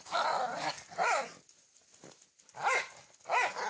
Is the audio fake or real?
real